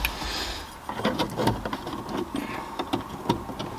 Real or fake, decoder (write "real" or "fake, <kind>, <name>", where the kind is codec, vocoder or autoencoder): real